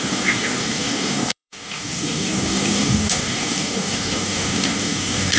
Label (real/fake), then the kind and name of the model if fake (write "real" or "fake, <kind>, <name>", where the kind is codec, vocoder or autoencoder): fake, codec, DAC